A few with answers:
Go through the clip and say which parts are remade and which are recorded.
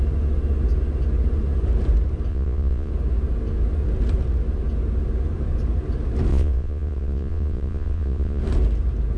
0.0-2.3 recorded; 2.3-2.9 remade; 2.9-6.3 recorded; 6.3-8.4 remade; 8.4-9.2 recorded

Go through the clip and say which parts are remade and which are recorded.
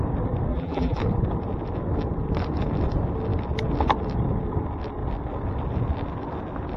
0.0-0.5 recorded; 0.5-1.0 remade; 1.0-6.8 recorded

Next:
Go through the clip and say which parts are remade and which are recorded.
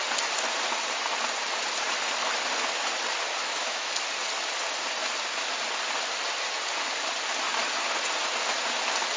0.0-3.4 recorded; 3.4-3.9 remade; 3.9-9.2 recorded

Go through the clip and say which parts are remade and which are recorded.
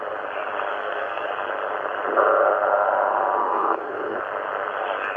0.0-0.7 recorded; 0.7-1.3 remade; 1.3-3.4 recorded; 3.4-4.2 remade; 4.2-5.2 recorded